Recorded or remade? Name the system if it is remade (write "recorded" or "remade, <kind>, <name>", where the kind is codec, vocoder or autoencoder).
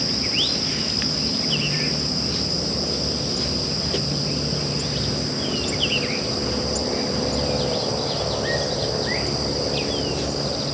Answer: recorded